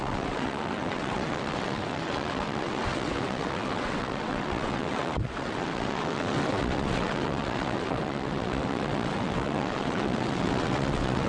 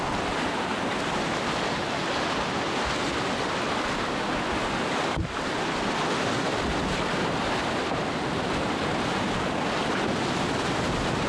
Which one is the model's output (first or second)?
first